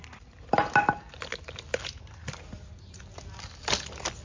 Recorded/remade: recorded